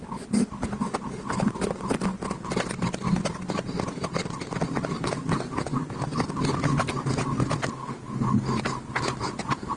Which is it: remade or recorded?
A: recorded